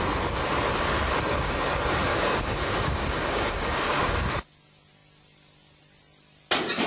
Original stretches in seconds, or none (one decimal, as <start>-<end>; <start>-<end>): 0.0-2.1; 4.2-6.9